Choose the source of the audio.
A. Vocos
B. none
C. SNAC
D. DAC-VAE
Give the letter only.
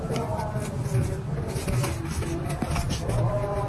B